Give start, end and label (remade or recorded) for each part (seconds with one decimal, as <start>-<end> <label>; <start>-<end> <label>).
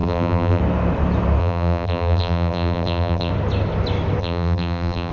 0.0-0.6 remade; 0.6-1.4 recorded; 1.4-3.3 remade; 3.3-4.2 recorded; 4.2-5.1 remade